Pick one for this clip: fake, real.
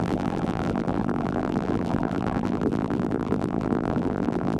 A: fake